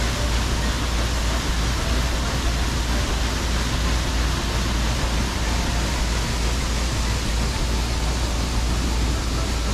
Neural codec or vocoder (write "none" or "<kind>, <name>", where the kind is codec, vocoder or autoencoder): none